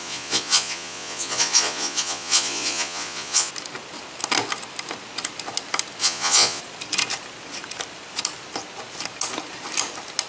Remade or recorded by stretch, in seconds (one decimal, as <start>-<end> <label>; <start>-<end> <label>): 0.0-3.5 remade; 3.5-6.0 recorded; 6.0-6.6 remade; 6.6-10.3 recorded